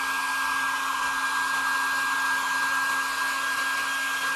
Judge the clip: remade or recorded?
recorded